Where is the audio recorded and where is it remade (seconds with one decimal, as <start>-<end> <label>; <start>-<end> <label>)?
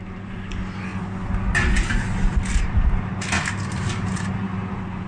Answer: 0.0-0.9 remade; 0.9-2.6 recorded; 2.6-3.1 remade; 3.1-3.7 recorded; 3.7-5.1 remade